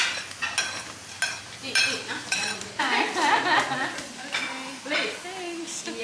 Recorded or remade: recorded